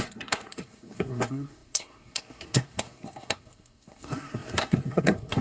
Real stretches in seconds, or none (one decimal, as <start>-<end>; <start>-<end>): none